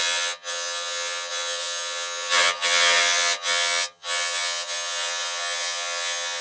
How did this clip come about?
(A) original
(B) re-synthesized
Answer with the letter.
B